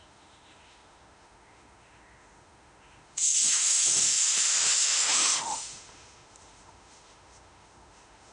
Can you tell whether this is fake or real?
fake